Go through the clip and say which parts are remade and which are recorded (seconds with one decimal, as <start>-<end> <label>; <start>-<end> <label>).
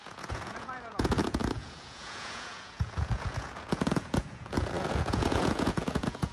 0.0-6.3 remade